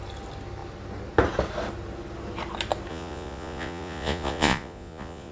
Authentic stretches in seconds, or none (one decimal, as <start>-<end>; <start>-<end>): 0.0-2.9